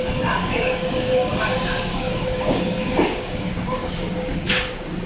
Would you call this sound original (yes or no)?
no